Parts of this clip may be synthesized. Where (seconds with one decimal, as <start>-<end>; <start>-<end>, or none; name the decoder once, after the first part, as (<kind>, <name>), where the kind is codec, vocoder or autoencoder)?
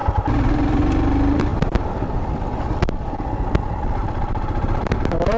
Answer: 0.0-0.8 (vocoder, BigVGAN v2)